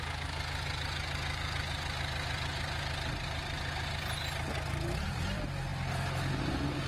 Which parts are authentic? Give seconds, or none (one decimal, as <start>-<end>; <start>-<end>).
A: 0.0-6.9

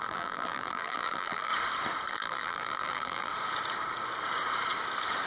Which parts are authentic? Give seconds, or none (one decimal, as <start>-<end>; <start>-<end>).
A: 1.5-2.1; 3.3-5.3